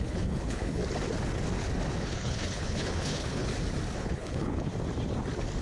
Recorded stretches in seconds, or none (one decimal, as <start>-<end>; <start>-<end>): 0.8-2.0; 3.5-4.0; 4.7-5.6